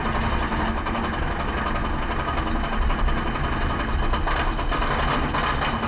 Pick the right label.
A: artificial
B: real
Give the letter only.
B